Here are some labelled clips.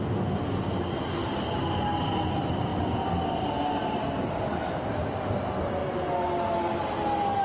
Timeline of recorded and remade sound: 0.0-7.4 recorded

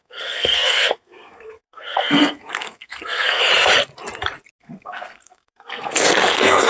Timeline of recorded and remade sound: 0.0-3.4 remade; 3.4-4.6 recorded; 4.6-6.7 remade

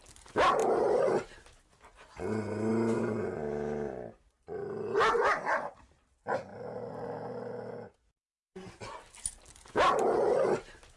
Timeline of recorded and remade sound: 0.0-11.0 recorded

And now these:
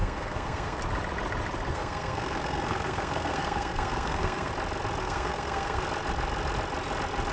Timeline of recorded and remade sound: 0.0-0.8 remade; 0.8-1.7 recorded; 1.7-4.5 remade; 4.5-5.0 recorded; 5.0-5.8 remade; 5.8-7.3 recorded

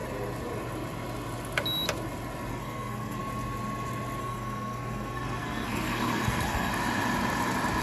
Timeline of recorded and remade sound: 0.0-2.5 recorded; 2.5-3.2 remade; 3.2-4.2 recorded; 4.2-6.7 remade; 6.7-7.8 recorded